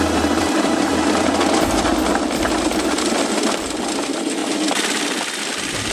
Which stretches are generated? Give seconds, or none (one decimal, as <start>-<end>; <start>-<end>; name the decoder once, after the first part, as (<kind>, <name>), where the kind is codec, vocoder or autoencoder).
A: 0.0-1.9 (vocoder, BigVGAN v2); 2.9-4.4; 5.4-5.9